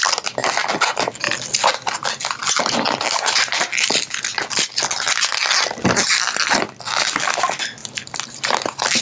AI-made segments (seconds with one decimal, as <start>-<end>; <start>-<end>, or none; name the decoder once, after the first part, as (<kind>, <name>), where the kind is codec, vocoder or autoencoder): none